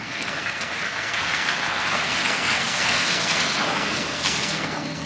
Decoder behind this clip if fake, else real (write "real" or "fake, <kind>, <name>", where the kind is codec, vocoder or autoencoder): fake, codec, SNAC